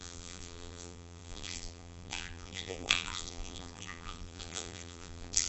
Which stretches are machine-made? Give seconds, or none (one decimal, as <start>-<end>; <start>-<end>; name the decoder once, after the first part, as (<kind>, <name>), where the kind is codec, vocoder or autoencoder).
0.0-5.5 (vocoder, BigVGAN v2)